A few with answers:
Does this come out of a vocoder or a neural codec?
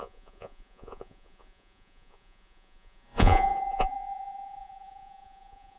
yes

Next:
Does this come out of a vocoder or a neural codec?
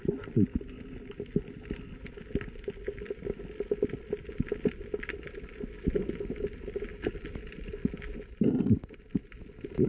no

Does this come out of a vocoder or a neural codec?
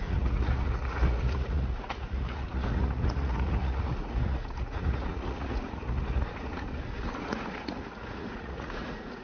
yes